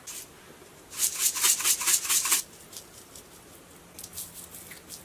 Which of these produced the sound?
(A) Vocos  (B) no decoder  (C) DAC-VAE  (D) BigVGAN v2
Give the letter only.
B